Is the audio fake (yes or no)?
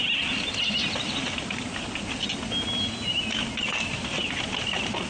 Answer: no